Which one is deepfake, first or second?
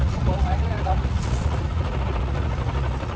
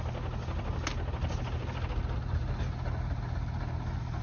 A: first